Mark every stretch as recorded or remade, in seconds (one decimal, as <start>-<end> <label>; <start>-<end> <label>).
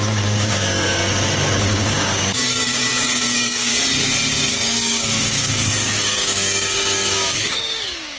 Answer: 0.0-1.0 remade; 1.0-1.6 recorded; 1.6-3.7 remade; 3.7-4.5 recorded; 4.5-8.2 remade